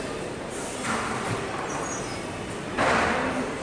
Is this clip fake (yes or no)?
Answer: no